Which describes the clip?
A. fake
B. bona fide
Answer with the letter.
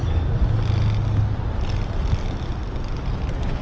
B